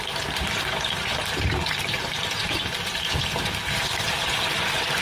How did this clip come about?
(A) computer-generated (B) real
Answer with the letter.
A